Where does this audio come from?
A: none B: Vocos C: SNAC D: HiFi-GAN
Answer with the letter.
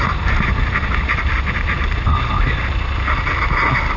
A